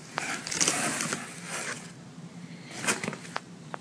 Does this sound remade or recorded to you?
recorded